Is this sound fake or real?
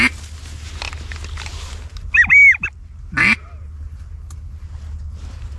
real